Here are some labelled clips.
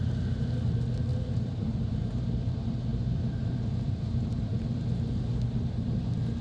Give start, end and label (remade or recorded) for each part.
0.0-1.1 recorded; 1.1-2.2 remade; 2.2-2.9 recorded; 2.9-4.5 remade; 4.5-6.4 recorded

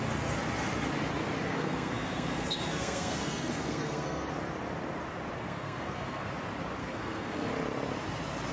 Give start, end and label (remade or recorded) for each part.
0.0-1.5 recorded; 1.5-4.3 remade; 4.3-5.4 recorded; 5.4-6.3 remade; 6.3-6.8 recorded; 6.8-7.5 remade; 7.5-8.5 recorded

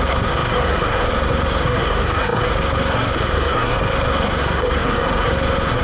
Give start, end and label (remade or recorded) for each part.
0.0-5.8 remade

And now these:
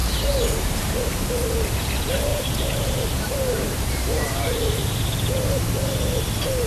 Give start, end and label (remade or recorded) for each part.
0.0-0.9 remade; 0.9-2.3 recorded; 2.3-5.7 remade; 5.7-6.7 recorded

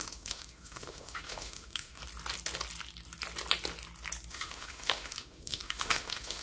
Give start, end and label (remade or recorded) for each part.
0.0-2.0 remade; 2.0-4.3 recorded; 4.3-6.4 remade

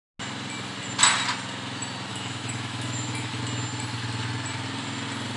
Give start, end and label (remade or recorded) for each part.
0.0-2.1 recorded; 2.1-3.4 remade; 3.4-5.4 recorded

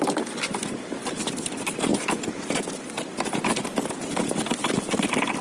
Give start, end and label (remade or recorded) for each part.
0.0-1.9 remade; 1.9-2.7 recorded; 2.7-3.1 remade; 3.1-4.0 recorded; 4.0-5.4 remade